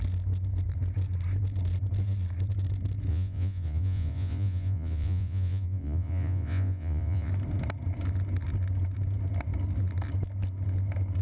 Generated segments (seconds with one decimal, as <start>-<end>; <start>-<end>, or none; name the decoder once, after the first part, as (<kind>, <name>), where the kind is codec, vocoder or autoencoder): 3.1-7.3 (vocoder, Vocos)